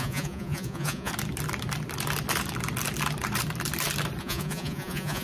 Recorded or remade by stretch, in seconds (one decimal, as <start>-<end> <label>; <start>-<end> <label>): 0.0-1.1 remade; 1.1-4.2 recorded; 4.2-5.2 remade